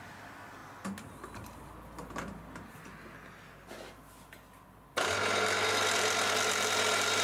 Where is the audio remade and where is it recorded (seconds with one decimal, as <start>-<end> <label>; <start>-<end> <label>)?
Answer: 0.0-7.2 recorded